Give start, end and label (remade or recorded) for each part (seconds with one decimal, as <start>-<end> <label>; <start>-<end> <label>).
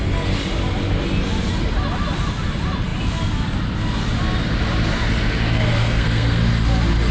0.0-5.8 recorded; 5.8-6.4 remade; 6.4-7.1 recorded